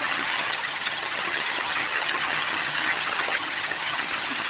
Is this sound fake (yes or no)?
yes